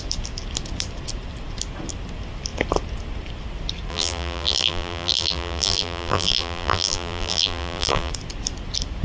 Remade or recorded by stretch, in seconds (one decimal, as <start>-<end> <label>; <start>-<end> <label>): 0.0-3.9 recorded; 3.9-8.1 remade; 8.1-9.0 recorded